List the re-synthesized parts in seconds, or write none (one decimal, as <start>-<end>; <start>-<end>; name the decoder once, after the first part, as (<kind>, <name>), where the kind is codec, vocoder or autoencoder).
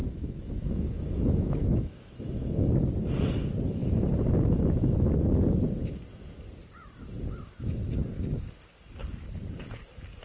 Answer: 0.0-2.7 (autoencoder, DAC-VAE)